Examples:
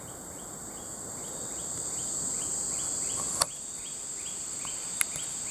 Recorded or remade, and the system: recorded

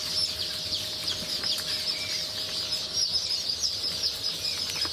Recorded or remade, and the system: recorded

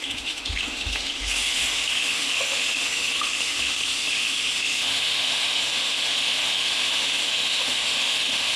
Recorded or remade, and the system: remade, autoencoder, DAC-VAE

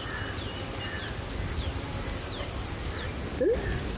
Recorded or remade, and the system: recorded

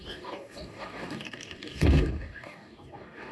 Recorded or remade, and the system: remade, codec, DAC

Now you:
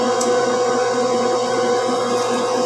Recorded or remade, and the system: remade, vocoder, Vocos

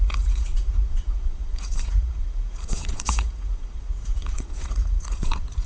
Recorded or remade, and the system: remade, vocoder, Vocos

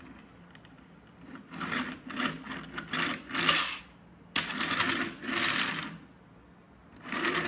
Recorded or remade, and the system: recorded